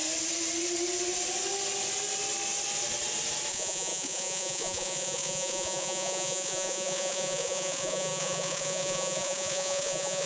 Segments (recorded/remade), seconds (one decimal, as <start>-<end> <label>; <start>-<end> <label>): 0.0-3.5 recorded; 3.5-10.3 remade